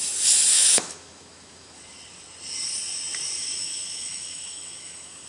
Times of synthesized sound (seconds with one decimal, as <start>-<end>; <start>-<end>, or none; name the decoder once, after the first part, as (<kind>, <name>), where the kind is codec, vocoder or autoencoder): 0.5-1.8 (autoencoder, DAC-VAE); 3.4-5.3